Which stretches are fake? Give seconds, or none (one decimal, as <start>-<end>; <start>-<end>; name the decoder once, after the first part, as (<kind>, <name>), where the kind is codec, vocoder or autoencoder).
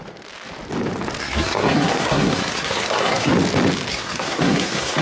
1.2-3.3 (codec, SNAC); 3.9-5.0